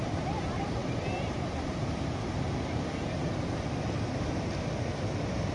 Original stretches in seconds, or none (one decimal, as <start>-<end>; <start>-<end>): 0.0-0.8; 2.8-5.5